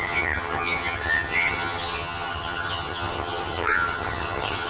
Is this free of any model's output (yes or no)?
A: no